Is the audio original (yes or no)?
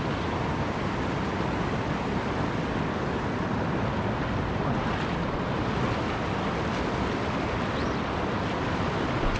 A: yes